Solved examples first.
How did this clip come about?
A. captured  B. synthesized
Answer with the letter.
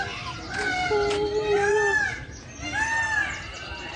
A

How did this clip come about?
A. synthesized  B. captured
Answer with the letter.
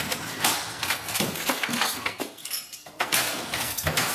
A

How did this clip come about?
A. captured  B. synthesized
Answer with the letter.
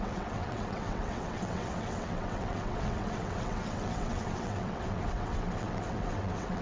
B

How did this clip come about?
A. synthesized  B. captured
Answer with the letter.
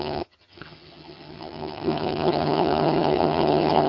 A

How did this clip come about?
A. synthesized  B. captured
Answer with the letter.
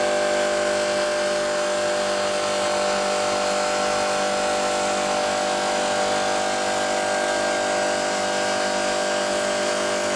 B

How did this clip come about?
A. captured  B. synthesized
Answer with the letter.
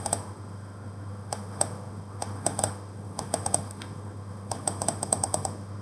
B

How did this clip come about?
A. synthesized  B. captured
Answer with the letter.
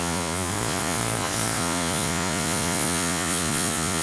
A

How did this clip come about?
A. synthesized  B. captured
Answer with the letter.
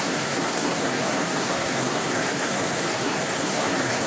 A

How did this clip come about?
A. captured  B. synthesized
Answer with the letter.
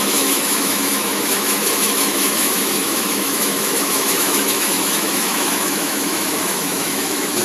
B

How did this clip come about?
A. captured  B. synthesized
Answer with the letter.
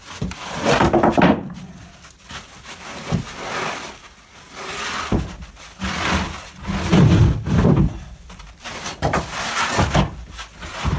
A